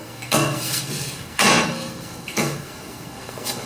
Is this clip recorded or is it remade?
remade